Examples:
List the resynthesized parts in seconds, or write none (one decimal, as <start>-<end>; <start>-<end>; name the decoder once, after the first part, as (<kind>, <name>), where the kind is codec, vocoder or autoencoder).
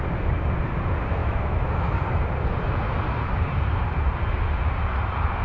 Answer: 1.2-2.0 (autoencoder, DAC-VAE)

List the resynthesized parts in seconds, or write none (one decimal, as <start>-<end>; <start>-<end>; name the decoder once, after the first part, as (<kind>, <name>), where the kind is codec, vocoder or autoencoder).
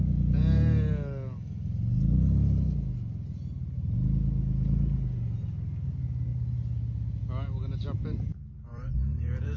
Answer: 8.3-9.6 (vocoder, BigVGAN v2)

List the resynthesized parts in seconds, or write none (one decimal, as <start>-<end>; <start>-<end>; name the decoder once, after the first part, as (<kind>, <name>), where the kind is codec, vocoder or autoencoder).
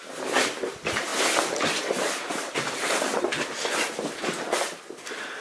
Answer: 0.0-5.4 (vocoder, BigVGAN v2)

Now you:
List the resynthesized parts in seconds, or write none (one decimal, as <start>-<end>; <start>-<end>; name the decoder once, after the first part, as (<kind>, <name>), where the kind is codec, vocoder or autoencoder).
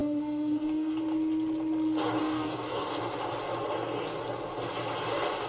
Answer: 0.0-1.0 (codec, DAC); 2.2-2.9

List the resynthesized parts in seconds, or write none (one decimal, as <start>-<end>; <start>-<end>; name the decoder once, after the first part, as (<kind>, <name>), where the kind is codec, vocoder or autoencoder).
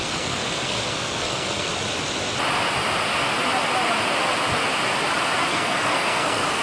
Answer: 0.0-1.7 (codec, SNAC); 5.5-6.6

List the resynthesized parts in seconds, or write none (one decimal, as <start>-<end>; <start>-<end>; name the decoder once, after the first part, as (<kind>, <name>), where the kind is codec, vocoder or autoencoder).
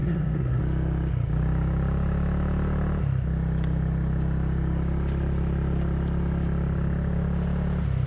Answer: 0.0-0.6 (codec, SNAC)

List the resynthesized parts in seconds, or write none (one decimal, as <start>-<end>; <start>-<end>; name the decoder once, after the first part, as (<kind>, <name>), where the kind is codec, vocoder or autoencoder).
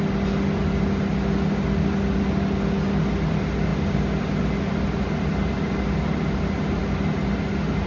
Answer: none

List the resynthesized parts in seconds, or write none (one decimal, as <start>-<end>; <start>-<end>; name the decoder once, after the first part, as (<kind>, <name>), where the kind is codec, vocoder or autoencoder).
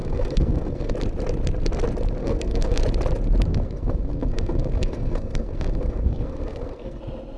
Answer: 0.0-0.9 (codec, SNAC); 2.2-2.8; 3.5-7.0